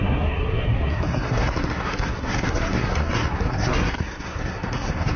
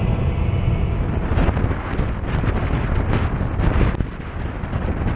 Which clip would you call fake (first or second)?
first